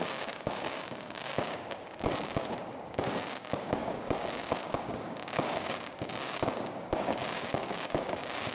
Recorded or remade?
remade